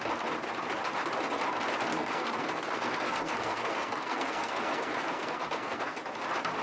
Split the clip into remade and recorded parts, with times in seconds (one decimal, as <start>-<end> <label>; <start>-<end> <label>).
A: 0.0-2.0 recorded; 2.0-6.0 remade; 6.0-6.6 recorded